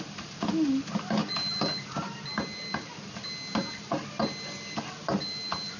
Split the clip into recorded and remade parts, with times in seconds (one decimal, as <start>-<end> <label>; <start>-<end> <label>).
0.0-5.8 recorded